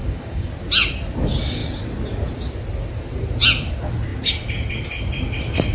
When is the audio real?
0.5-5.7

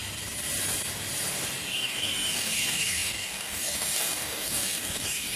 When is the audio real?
0.0-1.7

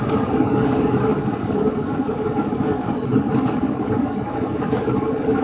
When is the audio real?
none

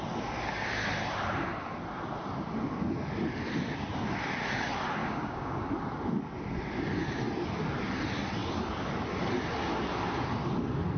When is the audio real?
0.0-5.0; 5.6-11.0

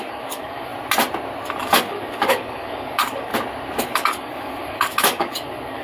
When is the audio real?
0.7-1.6; 3.3-3.8

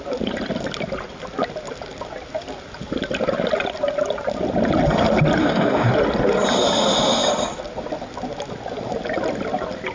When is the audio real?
0.0-5.4; 5.9-9.9

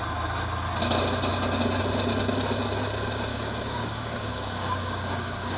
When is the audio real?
0.0-3.3

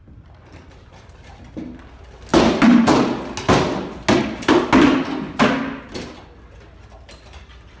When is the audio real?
0.0-7.8